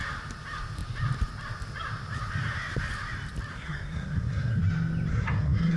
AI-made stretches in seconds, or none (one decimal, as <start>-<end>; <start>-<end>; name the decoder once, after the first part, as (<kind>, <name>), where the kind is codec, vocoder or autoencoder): 3.5-4.6 (codec, SNAC); 5.1-5.8